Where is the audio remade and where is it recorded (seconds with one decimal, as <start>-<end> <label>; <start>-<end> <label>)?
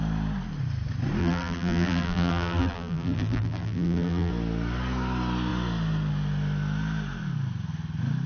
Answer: 0.0-1.2 recorded; 1.2-4.3 remade; 4.3-8.3 recorded